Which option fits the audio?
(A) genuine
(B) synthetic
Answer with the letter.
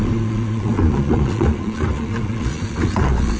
B